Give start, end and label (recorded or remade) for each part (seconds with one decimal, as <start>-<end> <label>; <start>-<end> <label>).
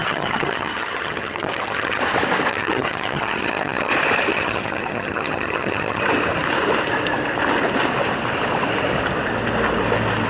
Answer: 0.0-2.0 remade; 2.0-2.5 recorded; 2.5-3.9 remade; 3.9-4.3 recorded; 4.3-6.0 remade; 6.0-10.3 recorded